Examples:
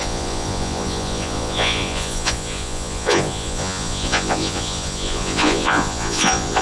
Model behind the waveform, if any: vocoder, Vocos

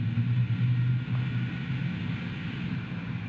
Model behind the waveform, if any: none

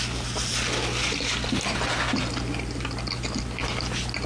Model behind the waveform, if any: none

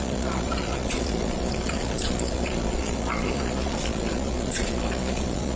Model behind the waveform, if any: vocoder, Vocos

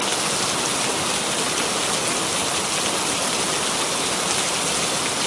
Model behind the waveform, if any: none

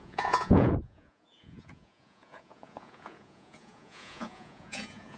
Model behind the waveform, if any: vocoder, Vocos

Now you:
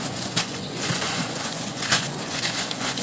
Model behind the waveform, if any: vocoder, Vocos